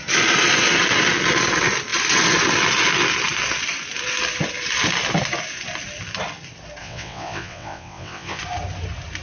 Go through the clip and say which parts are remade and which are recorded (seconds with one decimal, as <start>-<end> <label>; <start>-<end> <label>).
0.0-6.8 recorded; 6.8-8.4 remade; 8.4-9.2 recorded